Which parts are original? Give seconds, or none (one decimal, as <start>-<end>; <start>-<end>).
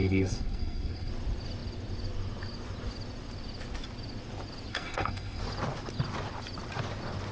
1.1-4.7; 5.4-7.3